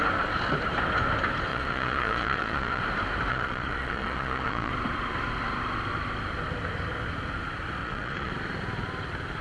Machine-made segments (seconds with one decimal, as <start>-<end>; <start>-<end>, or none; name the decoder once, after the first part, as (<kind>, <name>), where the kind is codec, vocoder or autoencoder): 1.5-2.8 (vocoder, Vocos); 3.3-4.7; 7.8-8.3